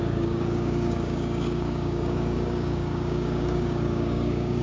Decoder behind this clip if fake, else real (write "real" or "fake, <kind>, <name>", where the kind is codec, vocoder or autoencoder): fake, codec, DAC